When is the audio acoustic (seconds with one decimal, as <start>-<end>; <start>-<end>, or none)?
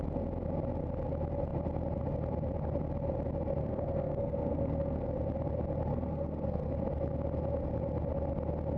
0.0-3.6; 5.1-5.9; 6.7-8.8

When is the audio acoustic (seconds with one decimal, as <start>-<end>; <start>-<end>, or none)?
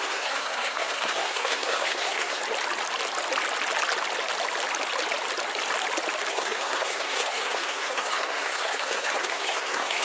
2.4-6.3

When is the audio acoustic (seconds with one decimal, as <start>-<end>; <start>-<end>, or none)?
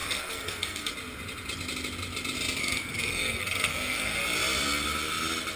0.9-2.6; 4.2-5.6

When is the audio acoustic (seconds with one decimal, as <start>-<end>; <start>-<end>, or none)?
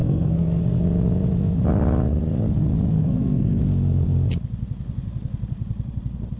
0.6-3.0; 3.6-6.4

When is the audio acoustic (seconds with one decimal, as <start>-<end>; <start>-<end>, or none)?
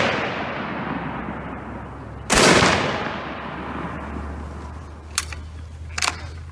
0.0-6.5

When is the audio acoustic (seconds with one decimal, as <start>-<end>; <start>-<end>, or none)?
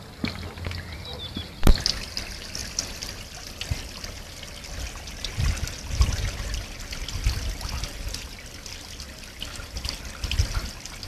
0.0-11.1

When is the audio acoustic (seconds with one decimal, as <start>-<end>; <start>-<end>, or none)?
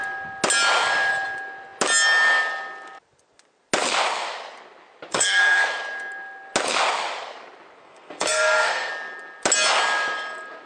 0.0-5.1; 5.7-7.8; 8.9-10.7